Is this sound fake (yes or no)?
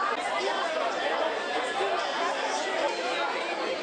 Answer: no